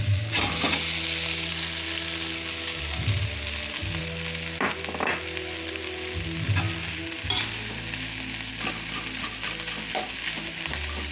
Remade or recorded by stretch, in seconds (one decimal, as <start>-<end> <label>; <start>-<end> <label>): 0.0-11.1 recorded